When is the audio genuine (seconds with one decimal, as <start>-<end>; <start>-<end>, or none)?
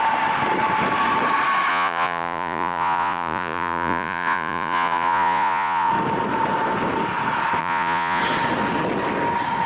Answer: 0.0-1.7; 5.9-7.6; 8.2-9.7